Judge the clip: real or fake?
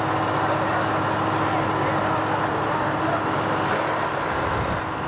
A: real